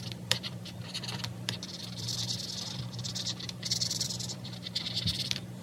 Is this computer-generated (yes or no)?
yes